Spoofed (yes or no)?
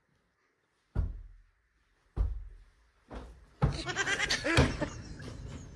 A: no